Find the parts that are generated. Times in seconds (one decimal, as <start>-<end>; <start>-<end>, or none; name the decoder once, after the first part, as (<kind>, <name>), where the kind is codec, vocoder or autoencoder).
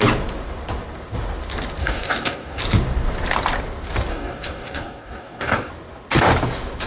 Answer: 1.8-2.6 (codec, DAC); 4.1-5.7